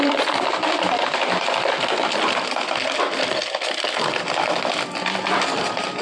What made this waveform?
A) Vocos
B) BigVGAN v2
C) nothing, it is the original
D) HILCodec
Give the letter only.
B